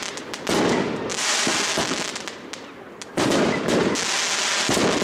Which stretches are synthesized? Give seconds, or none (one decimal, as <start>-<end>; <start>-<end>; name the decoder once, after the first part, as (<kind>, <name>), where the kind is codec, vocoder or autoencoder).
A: none